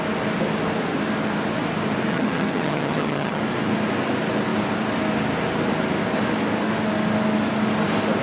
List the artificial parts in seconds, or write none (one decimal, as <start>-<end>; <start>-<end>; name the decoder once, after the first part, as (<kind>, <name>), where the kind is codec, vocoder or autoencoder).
2.1-3.4 (vocoder, HiFi-GAN)